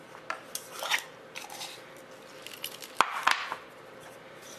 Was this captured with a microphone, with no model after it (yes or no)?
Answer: yes